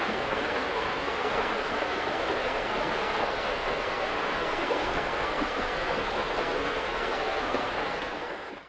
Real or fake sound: fake